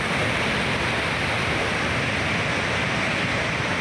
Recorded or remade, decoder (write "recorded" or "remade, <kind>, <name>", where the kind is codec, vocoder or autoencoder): recorded